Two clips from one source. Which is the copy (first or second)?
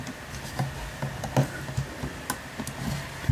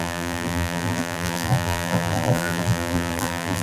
second